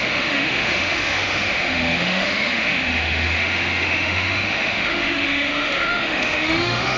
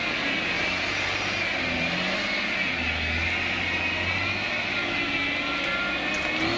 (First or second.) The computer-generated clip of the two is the first